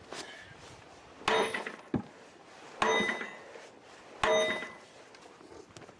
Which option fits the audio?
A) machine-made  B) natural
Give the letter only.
B